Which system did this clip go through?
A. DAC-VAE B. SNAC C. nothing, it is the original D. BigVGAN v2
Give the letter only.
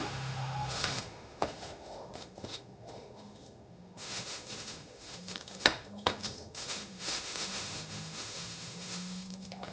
A